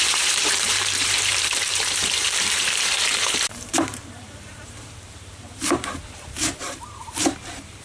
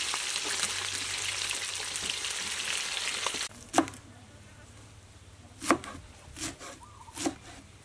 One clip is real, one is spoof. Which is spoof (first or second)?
first